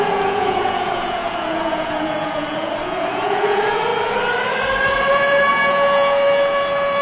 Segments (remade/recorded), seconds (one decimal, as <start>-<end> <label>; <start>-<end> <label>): 0.0-3.9 remade; 3.9-5.1 recorded; 5.1-7.0 remade